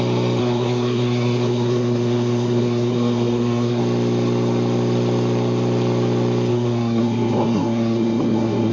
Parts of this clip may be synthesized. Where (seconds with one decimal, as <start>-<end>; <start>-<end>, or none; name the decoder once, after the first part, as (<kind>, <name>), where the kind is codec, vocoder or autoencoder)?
0.4-3.8 (codec, SNAC); 6.5-8.7